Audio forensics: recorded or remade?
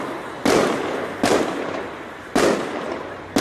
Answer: recorded